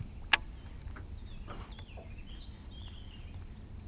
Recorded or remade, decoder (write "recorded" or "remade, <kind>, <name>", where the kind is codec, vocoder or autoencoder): recorded